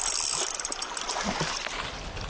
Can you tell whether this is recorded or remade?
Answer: recorded